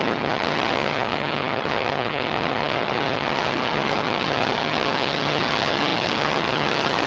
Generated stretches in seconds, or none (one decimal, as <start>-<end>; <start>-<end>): 0.0-7.1